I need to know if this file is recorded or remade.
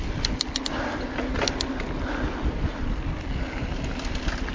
recorded